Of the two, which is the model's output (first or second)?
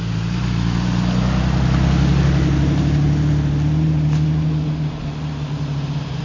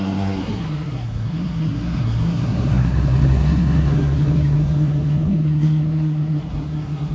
second